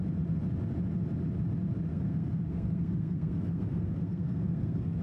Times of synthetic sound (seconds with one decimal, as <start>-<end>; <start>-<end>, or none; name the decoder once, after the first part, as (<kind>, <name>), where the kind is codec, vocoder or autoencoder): 1.9-5.0 (codec, SNAC)